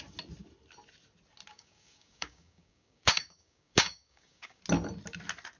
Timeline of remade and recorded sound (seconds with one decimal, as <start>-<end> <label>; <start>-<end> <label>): 0.0-1.5 recorded; 1.5-4.6 remade; 4.6-5.6 recorded